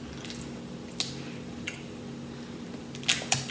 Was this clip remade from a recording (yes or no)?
no